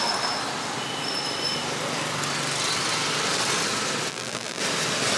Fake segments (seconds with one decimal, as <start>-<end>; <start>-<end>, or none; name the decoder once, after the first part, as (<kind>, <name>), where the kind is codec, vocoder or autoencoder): 4.1-4.6 (vocoder, BigVGAN v2)